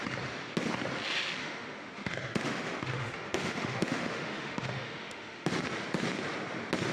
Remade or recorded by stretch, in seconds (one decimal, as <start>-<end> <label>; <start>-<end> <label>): 0.0-1.4 recorded; 1.4-5.5 remade; 5.5-6.9 recorded